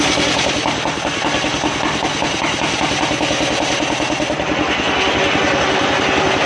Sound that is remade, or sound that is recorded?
recorded